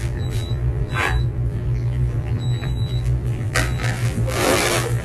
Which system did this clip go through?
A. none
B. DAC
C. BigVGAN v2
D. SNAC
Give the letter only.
C